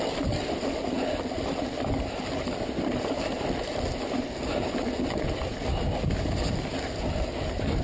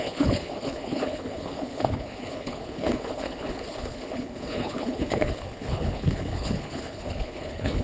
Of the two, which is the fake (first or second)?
second